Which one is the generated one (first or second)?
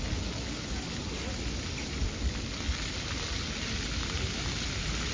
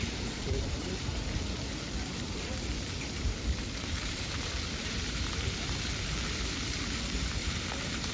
second